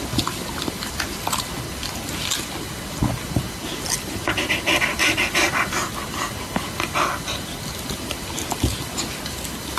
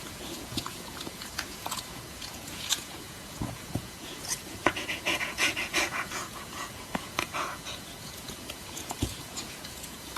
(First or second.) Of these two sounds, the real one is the first